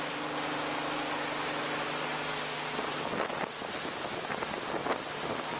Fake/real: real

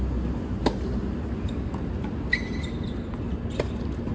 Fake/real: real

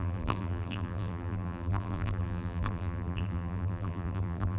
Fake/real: fake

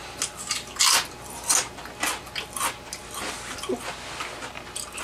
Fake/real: real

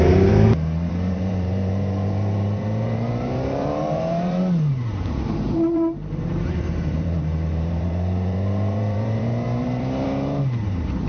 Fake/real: fake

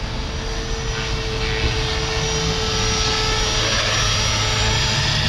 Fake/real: real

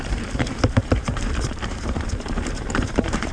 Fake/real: fake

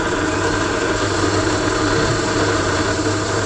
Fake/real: fake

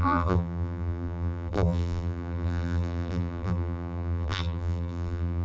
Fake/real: fake